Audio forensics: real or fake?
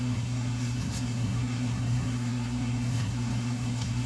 fake